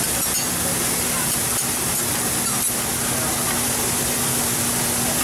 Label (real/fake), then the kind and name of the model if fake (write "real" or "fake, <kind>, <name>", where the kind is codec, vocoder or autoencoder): real